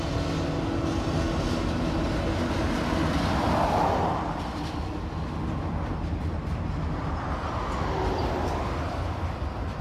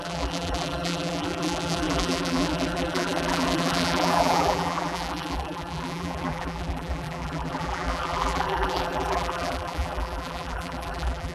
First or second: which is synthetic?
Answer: second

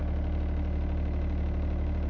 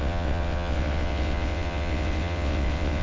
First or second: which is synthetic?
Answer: second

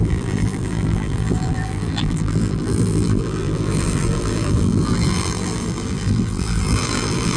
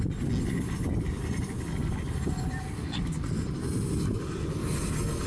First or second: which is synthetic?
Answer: first